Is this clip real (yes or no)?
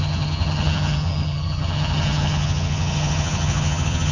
no